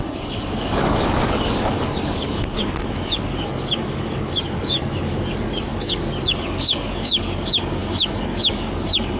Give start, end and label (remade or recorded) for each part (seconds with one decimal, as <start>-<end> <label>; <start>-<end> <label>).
0.0-9.2 remade